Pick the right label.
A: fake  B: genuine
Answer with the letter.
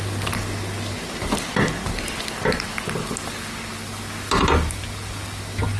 B